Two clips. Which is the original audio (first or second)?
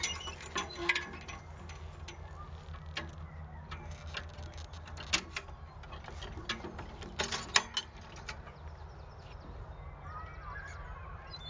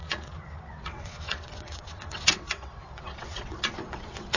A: first